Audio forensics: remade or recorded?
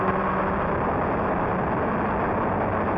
recorded